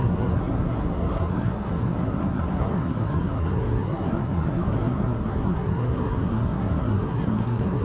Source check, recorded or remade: remade